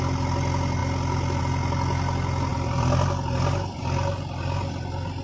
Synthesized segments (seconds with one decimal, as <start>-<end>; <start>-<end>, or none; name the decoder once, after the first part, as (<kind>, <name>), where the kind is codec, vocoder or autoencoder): 2.5-3.8 (vocoder, BigVGAN v2)